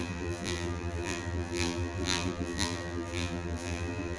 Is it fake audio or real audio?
fake